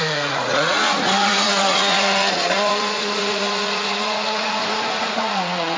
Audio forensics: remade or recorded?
remade